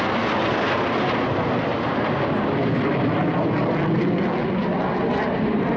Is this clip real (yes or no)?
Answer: yes